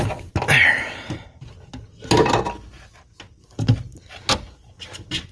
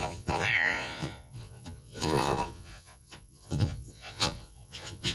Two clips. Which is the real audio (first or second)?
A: first